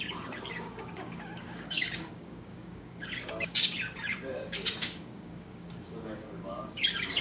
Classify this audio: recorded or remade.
remade